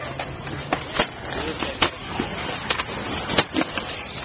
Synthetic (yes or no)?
no